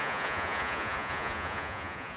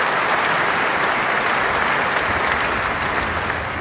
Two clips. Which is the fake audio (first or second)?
first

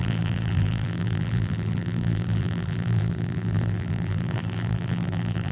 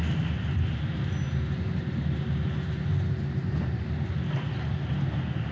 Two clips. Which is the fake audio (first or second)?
first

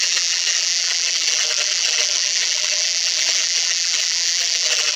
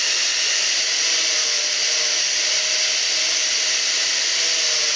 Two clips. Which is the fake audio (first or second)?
first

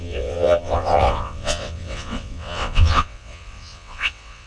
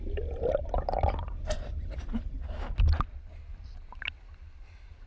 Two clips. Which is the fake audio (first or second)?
first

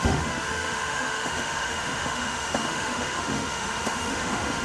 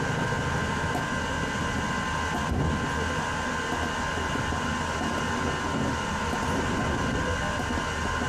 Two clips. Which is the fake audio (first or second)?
first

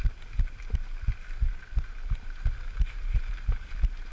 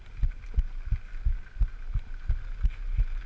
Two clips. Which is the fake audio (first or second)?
first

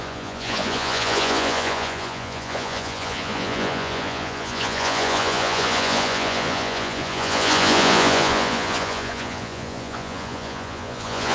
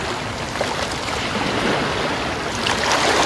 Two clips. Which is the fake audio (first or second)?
first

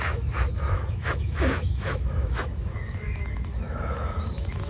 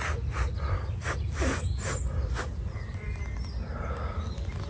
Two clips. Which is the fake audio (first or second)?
first